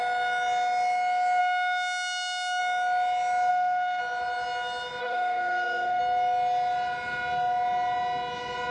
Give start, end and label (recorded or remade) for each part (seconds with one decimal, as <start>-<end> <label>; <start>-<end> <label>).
0.0-1.4 recorded; 1.4-2.6 remade; 2.6-3.5 recorded; 3.5-4.0 remade; 4.0-5.0 recorded; 5.0-6.0 remade; 6.0-8.7 recorded